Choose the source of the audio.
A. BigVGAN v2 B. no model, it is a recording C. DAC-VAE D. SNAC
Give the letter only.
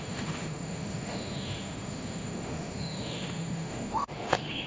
C